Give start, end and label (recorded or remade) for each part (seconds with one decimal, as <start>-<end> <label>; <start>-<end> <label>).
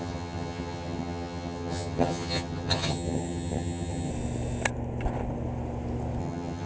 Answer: 0.0-4.1 remade; 4.1-6.2 recorded; 6.2-6.7 remade